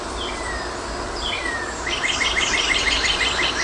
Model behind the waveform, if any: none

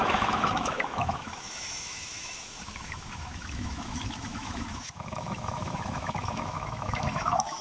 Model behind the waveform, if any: autoencoder, DAC-VAE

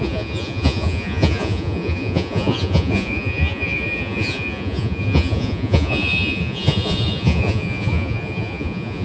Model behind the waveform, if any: vocoder, Vocos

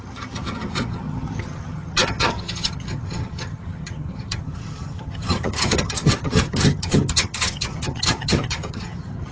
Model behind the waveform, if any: vocoder, HiFi-GAN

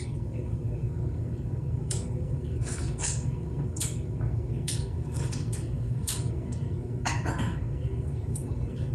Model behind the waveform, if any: codec, SNAC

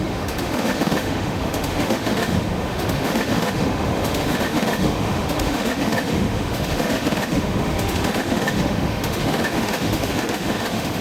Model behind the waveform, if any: autoencoder, DAC-VAE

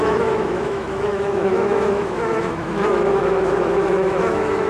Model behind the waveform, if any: autoencoder, DAC-VAE